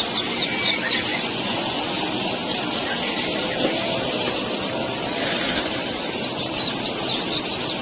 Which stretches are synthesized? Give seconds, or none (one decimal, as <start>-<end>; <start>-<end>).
1.1-1.8